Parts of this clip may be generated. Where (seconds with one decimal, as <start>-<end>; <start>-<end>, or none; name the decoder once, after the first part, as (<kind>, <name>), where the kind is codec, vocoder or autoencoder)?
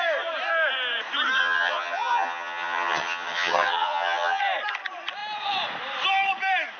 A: 1.4-4.4 (vocoder, HiFi-GAN)